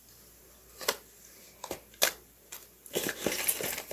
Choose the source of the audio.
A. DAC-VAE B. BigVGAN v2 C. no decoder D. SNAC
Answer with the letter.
C